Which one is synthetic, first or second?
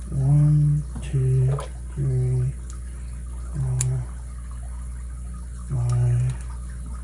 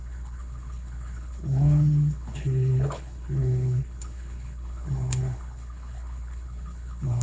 second